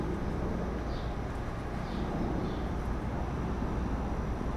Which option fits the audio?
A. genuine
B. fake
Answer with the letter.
A